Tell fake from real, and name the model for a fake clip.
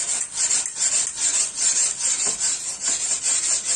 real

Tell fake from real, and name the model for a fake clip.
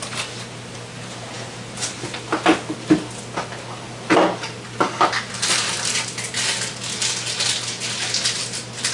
real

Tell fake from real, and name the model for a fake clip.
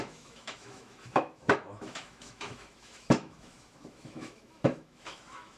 fake, autoencoder, DAC-VAE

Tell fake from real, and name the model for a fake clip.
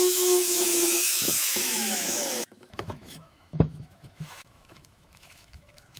fake, autoencoder, DAC-VAE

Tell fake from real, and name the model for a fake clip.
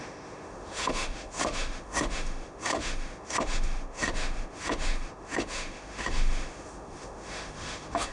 fake, autoencoder, DAC-VAE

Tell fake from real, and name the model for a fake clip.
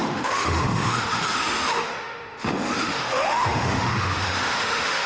fake, autoencoder, DAC-VAE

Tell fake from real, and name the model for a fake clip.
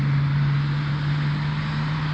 real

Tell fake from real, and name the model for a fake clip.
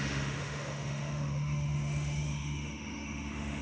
fake, autoencoder, DAC-VAE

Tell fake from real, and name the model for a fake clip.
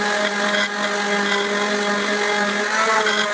real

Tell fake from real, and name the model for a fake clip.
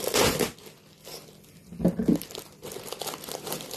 real